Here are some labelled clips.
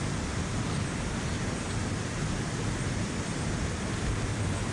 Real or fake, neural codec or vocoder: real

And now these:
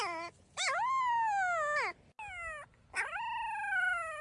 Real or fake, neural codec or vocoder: real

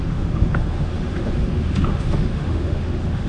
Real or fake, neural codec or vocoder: fake, autoencoder, DAC-VAE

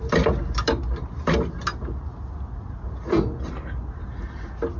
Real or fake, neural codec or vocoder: real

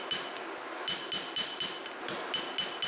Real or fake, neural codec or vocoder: real